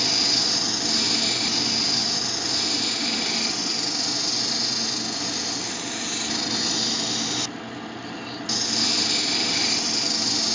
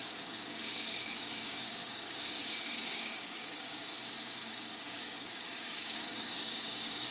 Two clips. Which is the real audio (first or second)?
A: first